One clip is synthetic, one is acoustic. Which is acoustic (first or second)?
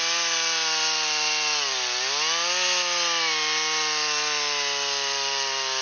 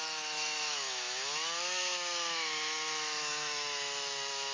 first